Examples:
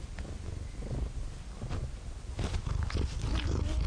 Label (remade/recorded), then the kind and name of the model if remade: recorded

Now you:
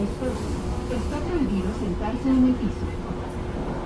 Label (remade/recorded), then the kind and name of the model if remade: recorded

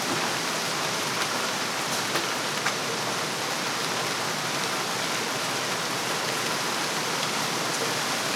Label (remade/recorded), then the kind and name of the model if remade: recorded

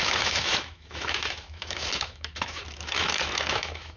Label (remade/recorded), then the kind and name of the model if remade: remade, autoencoder, DAC-VAE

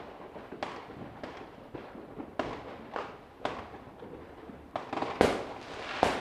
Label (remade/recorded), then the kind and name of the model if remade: recorded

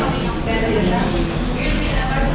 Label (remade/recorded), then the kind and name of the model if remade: recorded